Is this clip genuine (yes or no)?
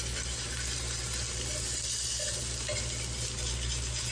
yes